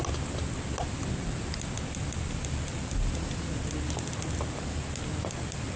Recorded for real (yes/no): yes